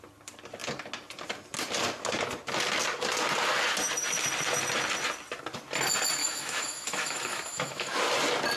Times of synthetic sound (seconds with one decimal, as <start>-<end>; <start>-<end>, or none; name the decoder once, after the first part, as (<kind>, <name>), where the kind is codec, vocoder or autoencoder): 6.2-8.0 (autoencoder, DAC-VAE)